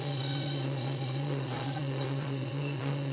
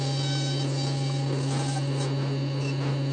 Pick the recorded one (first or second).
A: second